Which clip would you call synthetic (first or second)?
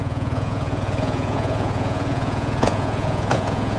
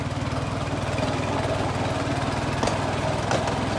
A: first